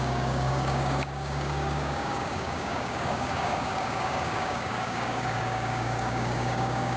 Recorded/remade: remade